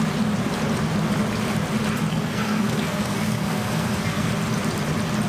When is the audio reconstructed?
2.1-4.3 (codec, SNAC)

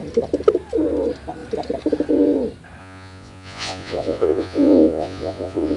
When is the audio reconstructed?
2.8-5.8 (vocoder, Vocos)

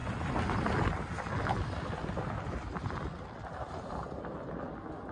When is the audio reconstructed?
none

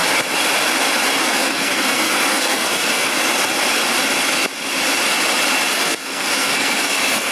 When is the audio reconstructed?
1.2-3.1 (codec, SNAC); 5.7-7.3

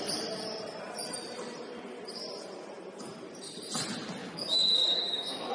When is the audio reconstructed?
4.2-5.5 (codec, DAC)